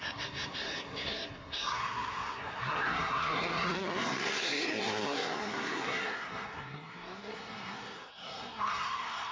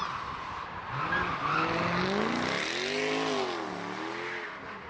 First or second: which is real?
second